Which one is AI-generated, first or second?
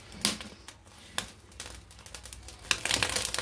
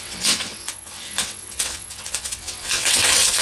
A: second